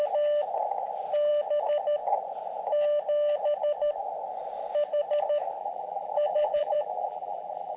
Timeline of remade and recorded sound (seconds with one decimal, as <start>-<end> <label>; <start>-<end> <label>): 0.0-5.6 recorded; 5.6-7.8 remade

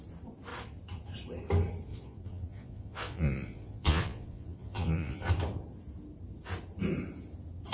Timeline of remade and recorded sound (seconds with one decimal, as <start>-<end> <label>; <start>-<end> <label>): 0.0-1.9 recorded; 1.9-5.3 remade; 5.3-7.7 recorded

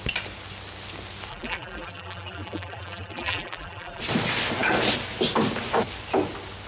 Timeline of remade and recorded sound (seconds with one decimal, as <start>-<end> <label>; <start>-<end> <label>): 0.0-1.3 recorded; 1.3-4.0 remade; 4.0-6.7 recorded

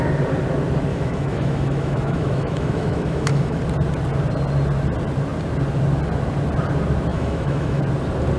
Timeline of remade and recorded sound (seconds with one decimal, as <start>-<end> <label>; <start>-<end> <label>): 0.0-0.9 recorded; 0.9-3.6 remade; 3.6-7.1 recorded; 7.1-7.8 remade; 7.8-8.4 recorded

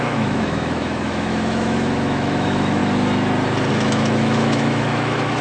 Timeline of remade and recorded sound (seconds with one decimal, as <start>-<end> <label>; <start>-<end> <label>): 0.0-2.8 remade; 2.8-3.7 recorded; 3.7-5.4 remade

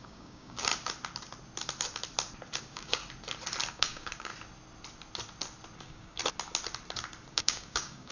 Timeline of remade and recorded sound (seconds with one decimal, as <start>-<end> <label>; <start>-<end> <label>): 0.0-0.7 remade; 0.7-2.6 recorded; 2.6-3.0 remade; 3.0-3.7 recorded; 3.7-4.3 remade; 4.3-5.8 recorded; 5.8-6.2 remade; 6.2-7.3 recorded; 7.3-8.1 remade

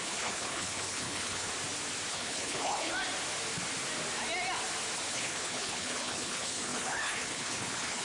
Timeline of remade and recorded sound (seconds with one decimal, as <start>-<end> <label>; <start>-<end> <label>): 0.0-1.5 remade; 1.5-2.1 recorded; 2.1-2.9 remade; 2.9-5.1 recorded; 5.1-8.0 remade

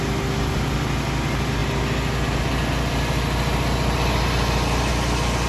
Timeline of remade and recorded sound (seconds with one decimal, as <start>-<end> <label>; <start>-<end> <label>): 0.0-5.5 recorded